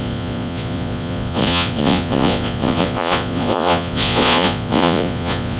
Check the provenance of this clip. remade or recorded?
remade